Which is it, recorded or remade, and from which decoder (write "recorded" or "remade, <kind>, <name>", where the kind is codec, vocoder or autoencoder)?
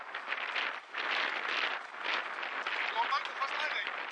recorded